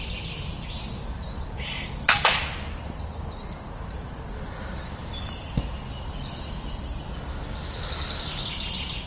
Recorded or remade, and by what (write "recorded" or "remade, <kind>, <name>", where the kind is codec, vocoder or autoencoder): recorded